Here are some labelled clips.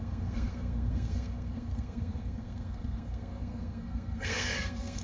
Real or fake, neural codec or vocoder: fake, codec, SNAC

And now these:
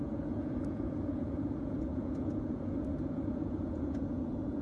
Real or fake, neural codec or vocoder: fake, vocoder, Vocos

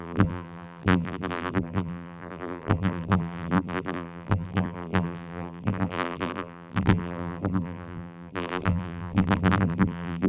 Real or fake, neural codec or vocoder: fake, vocoder, BigVGAN v2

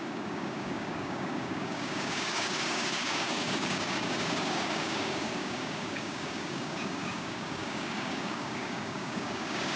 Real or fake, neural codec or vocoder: fake, codec, DAC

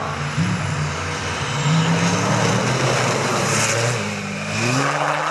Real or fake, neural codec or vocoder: real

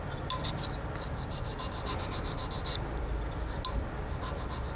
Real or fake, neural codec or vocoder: real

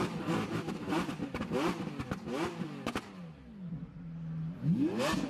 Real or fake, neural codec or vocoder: real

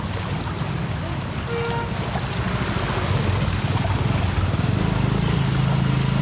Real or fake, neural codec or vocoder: real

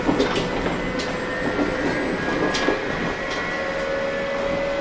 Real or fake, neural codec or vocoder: real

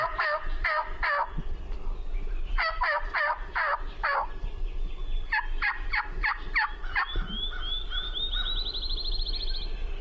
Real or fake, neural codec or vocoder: real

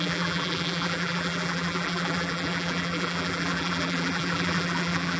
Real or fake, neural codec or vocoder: fake, vocoder, BigVGAN v2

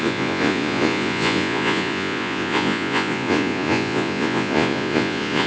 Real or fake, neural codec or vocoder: fake, vocoder, Vocos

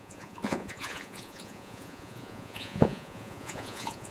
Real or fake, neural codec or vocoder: fake, vocoder, Vocos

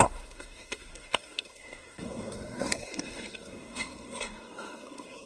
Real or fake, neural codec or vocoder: fake, codec, SNAC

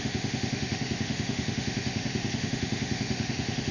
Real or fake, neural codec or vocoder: fake, autoencoder, DAC-VAE